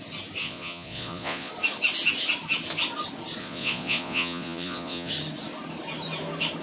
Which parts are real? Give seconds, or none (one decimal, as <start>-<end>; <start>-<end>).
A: 0.0-0.4; 1.5-3.4; 5.1-6.6